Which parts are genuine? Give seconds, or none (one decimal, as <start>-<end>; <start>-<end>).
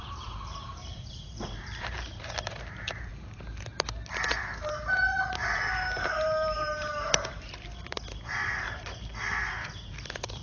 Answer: 3.1-4.1